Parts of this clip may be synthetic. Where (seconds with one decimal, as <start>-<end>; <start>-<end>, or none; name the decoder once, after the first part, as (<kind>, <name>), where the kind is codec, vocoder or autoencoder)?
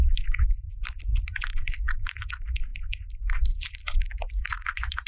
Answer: 0.0-5.1 (vocoder, BigVGAN v2)